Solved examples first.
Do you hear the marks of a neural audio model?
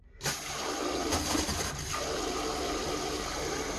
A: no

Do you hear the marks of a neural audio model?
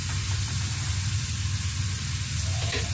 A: no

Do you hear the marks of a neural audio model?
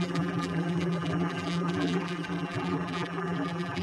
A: yes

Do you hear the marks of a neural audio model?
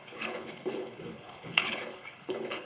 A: yes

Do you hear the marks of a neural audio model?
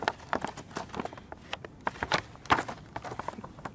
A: no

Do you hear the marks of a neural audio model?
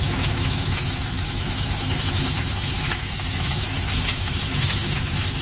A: yes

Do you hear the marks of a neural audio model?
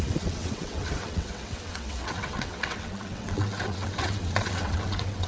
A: yes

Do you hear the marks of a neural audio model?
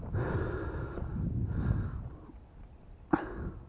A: no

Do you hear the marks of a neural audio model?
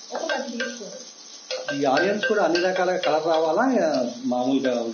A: no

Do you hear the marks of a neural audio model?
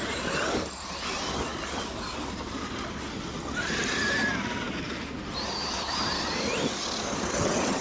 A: no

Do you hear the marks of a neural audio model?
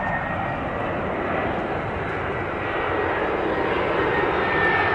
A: no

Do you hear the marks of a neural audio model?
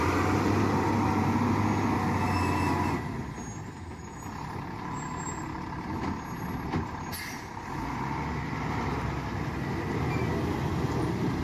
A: no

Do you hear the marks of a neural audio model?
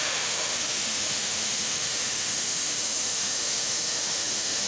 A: yes